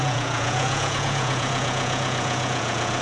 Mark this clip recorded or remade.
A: remade